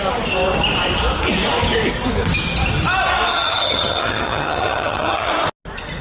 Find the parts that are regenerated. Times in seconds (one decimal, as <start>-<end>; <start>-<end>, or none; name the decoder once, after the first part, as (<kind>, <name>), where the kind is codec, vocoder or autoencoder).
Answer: 3.3-5.3 (vocoder, HiFi-GAN)